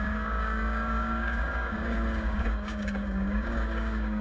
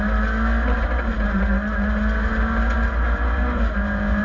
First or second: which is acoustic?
second